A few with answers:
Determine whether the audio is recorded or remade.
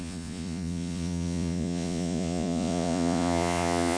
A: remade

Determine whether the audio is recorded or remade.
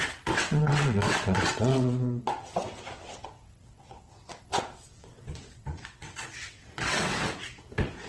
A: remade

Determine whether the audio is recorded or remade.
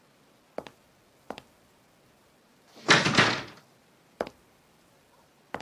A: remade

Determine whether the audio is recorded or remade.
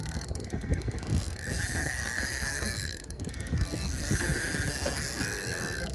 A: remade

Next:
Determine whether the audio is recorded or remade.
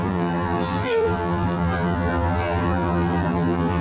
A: remade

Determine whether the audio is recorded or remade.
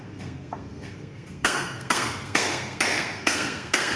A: remade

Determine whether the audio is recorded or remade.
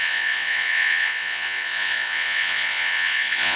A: remade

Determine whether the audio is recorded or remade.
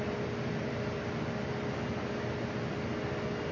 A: recorded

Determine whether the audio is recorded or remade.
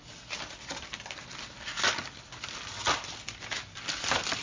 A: recorded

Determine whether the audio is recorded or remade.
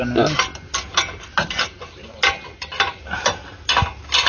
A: recorded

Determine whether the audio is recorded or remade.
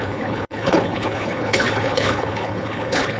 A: remade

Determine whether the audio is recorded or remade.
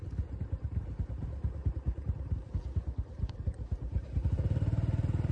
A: remade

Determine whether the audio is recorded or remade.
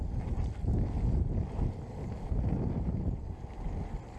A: recorded